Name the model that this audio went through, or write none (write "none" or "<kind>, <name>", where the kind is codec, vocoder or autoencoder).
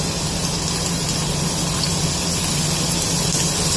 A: none